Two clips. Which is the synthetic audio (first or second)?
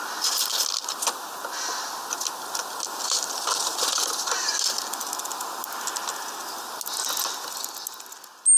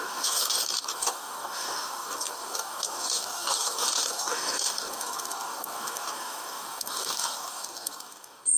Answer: second